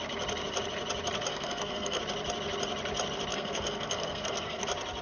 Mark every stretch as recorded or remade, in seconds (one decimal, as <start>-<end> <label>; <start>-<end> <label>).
0.0-1.3 recorded; 1.3-2.0 remade; 2.0-3.3 recorded; 3.3-4.6 remade; 4.6-5.0 recorded